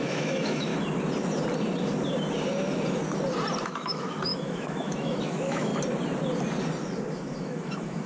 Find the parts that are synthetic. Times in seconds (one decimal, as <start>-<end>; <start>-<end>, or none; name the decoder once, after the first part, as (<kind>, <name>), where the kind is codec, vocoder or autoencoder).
0.0-0.7 (autoencoder, DAC-VAE); 3.6-5.7; 7.1-8.1